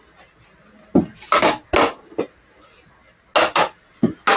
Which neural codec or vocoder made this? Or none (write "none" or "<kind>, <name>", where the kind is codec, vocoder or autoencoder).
none